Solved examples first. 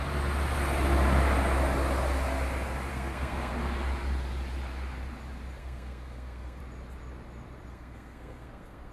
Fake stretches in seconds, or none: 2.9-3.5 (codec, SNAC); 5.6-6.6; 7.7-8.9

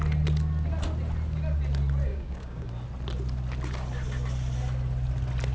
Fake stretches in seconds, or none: 2.1-2.7 (codec, DAC)

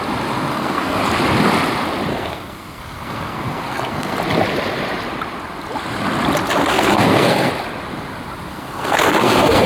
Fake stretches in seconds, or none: 0.5-1.0 (codec, SNAC); 2.1-4.2; 6.6-7.5; 8.5-9.7

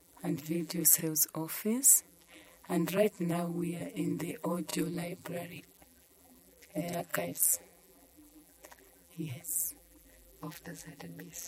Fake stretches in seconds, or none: 0.0-1.0 (vocoder, BigVGAN v2); 2.0-11.5

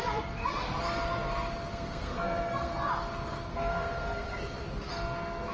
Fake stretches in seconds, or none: 1.7-2.9 (codec, SNAC); 3.5-4.4